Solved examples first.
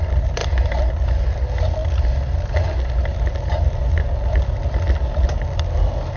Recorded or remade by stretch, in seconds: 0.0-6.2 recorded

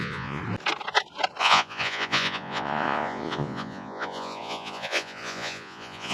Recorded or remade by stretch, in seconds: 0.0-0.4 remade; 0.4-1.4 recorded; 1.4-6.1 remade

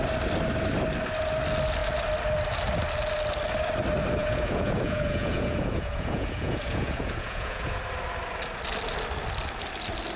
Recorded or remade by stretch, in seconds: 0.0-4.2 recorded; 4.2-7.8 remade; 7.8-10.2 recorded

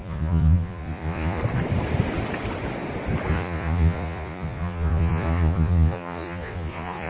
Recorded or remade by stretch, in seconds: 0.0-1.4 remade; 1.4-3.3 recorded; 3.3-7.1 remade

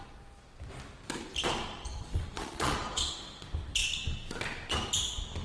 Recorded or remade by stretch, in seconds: 0.0-1.9 recorded; 1.9-3.1 remade; 3.1-5.4 recorded

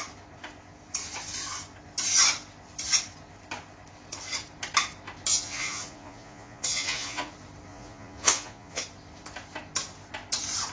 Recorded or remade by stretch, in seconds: 0.0-5.3 recorded; 5.3-7.3 remade; 7.3-7.7 recorded; 7.7-8.8 remade; 8.8-10.7 recorded